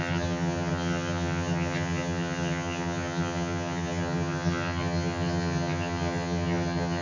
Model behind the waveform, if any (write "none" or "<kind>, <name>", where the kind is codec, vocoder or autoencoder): vocoder, HiFi-GAN